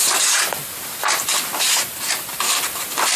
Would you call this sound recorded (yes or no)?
no